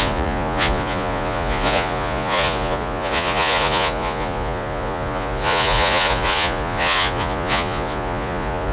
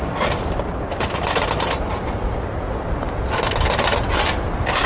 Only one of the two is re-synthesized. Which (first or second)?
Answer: first